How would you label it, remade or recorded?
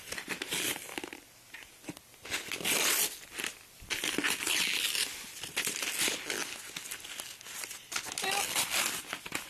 recorded